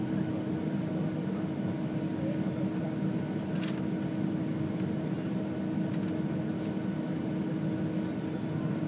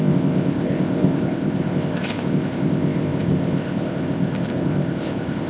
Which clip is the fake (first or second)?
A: second